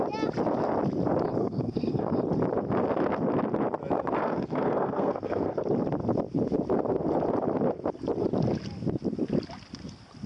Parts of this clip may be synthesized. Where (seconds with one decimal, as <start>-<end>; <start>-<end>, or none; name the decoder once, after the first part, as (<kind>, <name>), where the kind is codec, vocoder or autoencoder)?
1.4-2.1 (codec, SNAC); 4.2-5.6